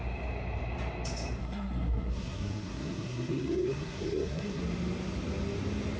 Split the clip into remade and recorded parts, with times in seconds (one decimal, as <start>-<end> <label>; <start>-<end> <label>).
0.0-1.4 recorded; 1.4-4.6 remade; 4.6-6.0 recorded